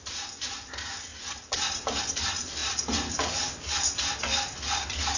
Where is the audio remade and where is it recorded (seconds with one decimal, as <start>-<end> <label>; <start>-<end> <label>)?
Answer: 0.0-5.2 recorded